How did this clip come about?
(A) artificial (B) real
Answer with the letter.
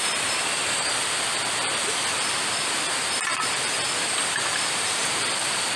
A